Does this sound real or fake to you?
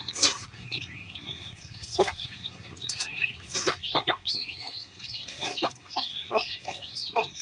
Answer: fake